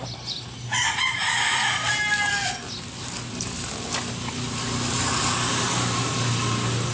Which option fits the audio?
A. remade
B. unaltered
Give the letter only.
B